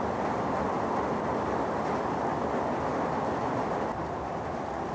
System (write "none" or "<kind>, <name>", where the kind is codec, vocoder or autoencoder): none